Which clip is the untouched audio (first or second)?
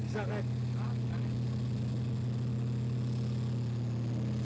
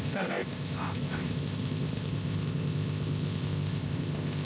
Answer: first